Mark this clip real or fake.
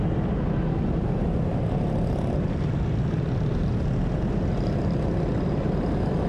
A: fake